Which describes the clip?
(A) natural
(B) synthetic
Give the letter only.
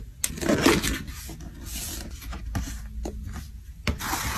A